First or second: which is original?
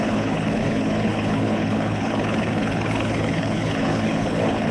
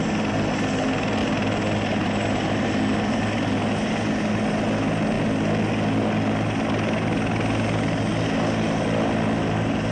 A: second